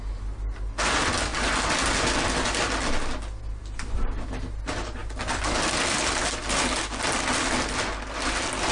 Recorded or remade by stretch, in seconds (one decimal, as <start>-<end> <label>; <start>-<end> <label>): 0.0-8.7 recorded